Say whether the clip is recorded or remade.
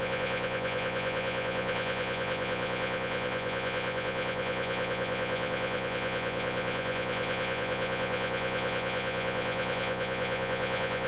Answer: remade